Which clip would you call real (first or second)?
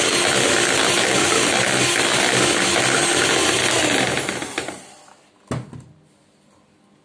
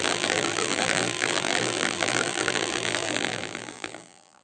first